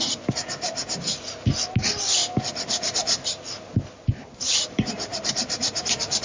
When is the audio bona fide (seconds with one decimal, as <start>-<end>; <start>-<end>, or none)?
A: 0.7-4.3; 5.1-6.2